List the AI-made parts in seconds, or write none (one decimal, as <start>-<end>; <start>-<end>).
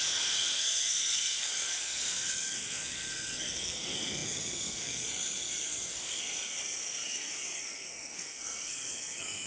0.0-9.5